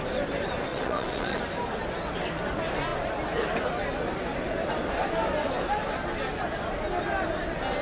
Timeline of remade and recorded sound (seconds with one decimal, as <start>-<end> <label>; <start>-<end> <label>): 0.0-0.7 recorded; 0.7-1.4 remade; 1.4-7.8 recorded

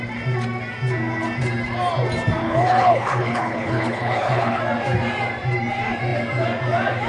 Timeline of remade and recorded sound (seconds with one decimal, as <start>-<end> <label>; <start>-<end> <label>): 0.0-2.4 recorded; 2.4-4.6 remade; 4.6-7.1 recorded

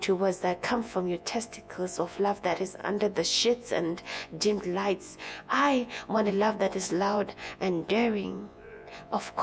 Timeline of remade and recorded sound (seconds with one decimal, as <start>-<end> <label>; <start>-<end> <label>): 0.0-9.4 remade

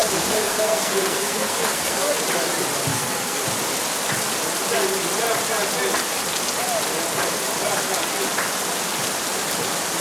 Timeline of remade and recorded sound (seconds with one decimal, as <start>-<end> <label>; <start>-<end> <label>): 0.0-2.1 remade; 2.1-2.9 recorded; 2.9-3.4 remade; 3.4-10.0 recorded

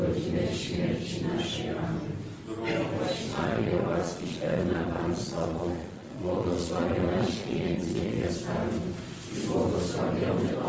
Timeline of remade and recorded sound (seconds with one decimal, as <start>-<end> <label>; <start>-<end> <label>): 0.0-3.3 recorded; 3.3-8.3 remade; 8.3-10.7 recorded